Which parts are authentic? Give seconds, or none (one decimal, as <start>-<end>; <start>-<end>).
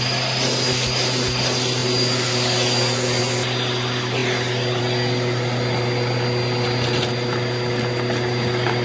0.0-8.8